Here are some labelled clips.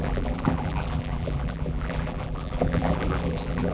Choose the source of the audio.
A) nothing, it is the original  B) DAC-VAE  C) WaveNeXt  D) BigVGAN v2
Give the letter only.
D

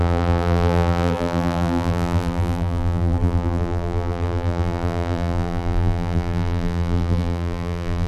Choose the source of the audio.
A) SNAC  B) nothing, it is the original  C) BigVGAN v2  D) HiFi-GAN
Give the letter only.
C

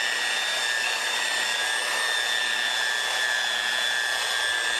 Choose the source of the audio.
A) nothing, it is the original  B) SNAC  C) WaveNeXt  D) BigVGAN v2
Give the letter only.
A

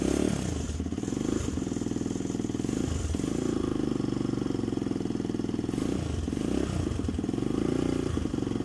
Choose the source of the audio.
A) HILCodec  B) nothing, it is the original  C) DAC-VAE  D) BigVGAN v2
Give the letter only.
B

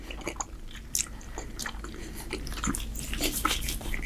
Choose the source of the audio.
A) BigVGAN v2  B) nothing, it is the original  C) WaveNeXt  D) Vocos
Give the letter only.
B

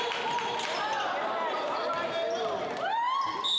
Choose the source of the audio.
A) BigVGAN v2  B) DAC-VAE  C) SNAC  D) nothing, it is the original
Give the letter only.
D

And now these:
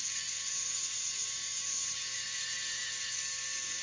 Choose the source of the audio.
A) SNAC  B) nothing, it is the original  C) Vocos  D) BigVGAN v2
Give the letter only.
D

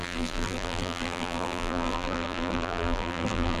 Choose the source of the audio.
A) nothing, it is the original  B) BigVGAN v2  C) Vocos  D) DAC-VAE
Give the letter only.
B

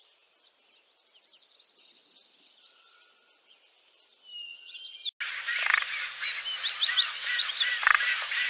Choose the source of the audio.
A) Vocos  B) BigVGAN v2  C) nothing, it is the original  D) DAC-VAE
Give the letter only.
C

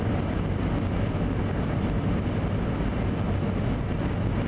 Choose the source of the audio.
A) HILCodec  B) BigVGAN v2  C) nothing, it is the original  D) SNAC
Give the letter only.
C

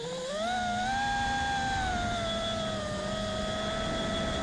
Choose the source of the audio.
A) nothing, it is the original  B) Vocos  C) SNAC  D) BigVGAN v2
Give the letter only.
A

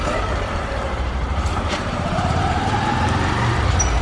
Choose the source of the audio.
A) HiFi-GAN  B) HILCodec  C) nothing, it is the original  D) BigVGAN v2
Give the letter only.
D